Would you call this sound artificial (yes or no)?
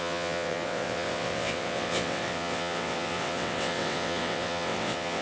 yes